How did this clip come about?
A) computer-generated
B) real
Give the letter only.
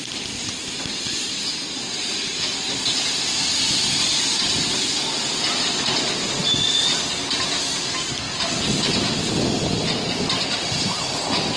B